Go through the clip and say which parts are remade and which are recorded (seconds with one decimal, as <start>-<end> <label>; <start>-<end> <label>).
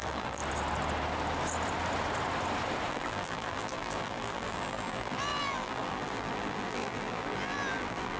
0.0-0.4 remade; 0.4-2.9 recorded; 2.9-8.2 remade